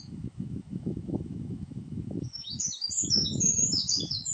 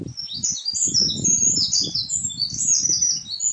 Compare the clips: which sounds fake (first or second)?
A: first